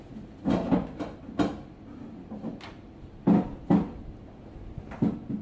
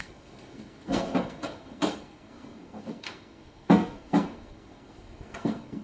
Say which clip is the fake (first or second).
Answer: second